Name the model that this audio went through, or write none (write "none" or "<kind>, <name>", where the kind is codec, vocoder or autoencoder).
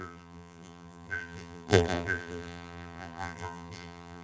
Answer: vocoder, BigVGAN v2